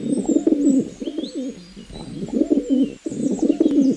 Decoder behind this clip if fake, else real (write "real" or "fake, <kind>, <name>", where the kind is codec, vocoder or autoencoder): real